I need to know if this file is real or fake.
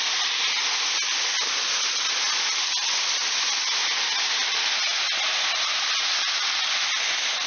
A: real